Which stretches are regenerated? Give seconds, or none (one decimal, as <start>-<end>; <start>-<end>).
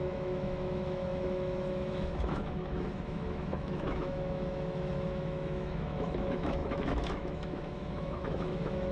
0.0-8.9